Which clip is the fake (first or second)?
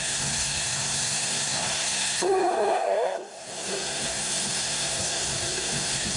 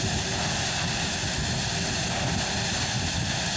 first